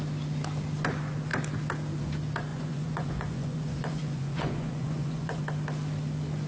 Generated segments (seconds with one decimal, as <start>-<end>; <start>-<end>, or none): 2.5-5.4